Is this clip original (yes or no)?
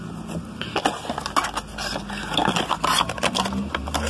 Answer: yes